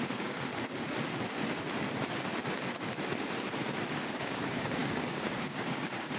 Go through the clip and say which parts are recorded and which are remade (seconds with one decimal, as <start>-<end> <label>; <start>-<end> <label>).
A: 0.0-0.5 remade; 0.5-4.2 recorded; 4.2-6.2 remade